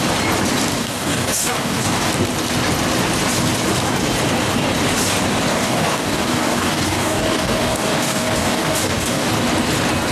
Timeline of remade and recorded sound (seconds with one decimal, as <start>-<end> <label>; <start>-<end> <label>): 0.0-0.8 recorded; 0.8-2.1 remade; 2.1-5.5 recorded; 5.5-9.3 remade; 9.3-10.1 recorded